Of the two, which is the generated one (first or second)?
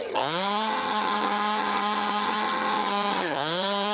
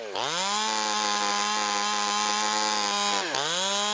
first